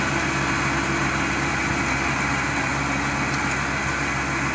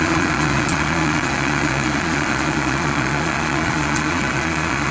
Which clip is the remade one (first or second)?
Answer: second